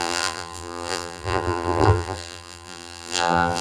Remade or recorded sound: remade